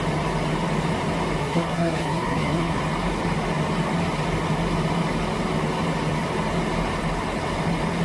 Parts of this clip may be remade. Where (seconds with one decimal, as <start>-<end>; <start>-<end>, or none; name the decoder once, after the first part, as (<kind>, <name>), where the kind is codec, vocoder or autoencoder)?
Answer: 1.4-2.8 (codec, SNAC)